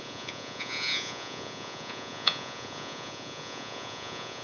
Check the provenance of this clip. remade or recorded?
remade